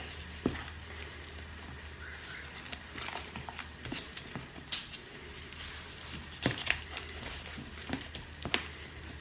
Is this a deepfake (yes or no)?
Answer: no